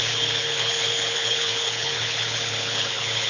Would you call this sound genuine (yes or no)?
no